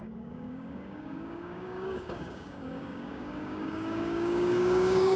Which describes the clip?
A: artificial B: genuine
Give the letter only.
A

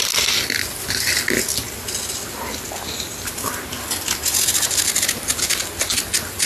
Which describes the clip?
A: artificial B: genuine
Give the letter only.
B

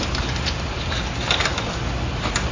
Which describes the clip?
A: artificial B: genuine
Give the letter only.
B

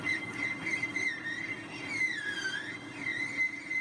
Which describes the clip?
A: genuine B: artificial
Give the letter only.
A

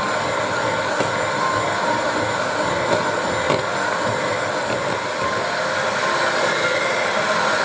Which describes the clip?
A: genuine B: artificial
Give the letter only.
A